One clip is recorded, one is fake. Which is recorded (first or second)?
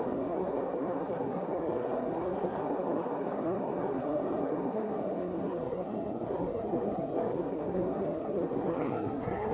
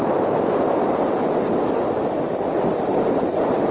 second